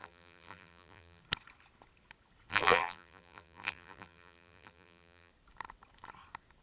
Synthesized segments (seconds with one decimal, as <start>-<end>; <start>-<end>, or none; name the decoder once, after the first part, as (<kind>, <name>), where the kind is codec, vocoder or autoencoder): 0.0-1.2 (vocoder, BigVGAN v2); 2.5-5.3